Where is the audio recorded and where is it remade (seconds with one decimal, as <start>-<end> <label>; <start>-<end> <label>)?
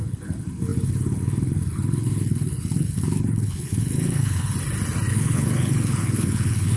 0.0-4.5 remade; 4.5-5.1 recorded; 5.1-6.8 remade